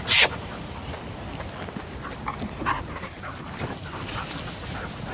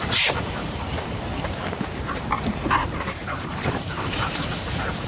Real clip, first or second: first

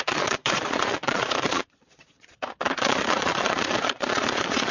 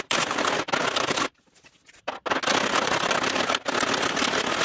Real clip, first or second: second